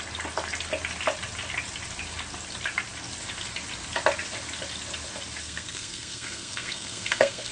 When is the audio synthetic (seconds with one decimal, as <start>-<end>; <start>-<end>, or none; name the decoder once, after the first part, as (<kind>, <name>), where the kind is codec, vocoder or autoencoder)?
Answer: 5.4-7.5 (codec, SNAC)